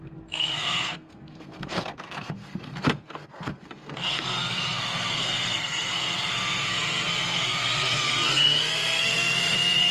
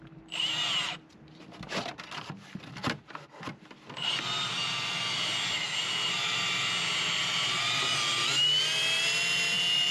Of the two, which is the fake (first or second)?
first